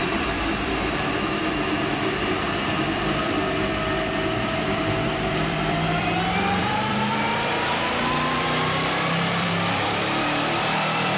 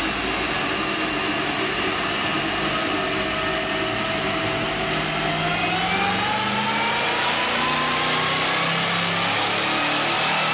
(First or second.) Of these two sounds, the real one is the second